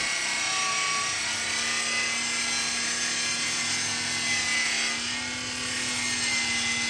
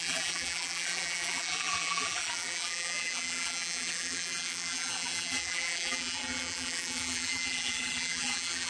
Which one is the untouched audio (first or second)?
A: first